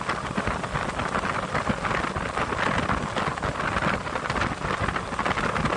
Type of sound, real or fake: real